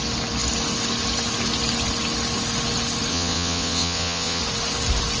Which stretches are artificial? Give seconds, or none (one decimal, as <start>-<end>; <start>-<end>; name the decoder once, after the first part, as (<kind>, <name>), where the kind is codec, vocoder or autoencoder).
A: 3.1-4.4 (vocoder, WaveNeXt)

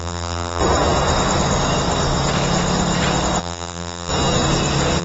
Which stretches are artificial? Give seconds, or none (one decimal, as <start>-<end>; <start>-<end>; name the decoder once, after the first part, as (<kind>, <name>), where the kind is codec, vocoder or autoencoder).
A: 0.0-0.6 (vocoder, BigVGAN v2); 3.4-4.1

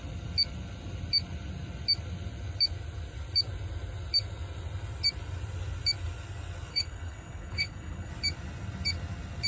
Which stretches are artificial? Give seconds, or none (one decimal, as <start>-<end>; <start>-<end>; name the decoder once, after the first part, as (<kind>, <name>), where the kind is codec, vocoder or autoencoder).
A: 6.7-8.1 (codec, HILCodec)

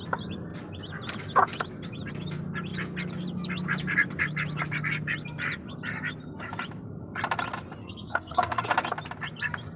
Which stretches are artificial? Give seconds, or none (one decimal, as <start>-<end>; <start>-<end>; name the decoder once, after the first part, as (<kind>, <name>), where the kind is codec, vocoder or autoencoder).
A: 7.8-8.7 (codec, SNAC)